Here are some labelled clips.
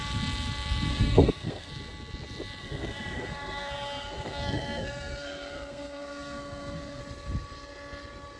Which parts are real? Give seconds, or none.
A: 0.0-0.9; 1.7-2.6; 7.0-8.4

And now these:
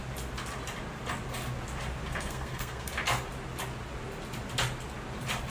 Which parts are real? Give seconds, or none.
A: 0.0-2.1; 2.9-5.5

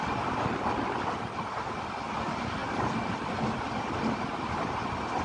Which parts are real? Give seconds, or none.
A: 0.0-5.2

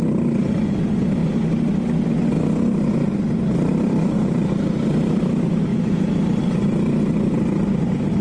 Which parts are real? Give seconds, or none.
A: 0.0-5.7; 6.2-8.2

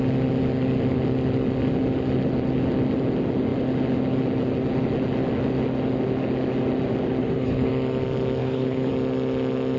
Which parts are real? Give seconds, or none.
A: 0.0-7.2; 7.7-8.4; 8.9-9.8

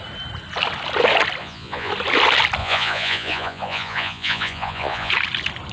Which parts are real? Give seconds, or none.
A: 0.0-1.4; 1.9-2.6; 5.1-5.7